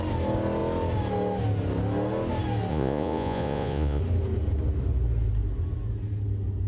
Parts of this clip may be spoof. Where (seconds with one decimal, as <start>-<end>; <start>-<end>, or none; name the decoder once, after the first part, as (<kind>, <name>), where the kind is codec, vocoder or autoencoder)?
2.7-4.0 (vocoder, Vocos)